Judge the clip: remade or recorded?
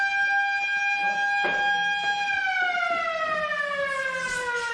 recorded